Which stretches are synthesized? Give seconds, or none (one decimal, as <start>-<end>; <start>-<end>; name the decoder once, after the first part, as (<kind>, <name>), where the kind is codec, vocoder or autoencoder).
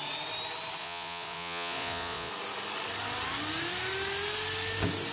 0.8-2.3 (vocoder, Vocos)